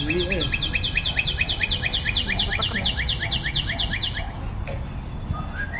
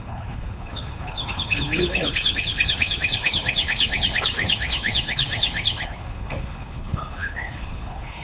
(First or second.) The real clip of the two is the first